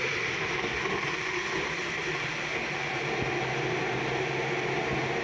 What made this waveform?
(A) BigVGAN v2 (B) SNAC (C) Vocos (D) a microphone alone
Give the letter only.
D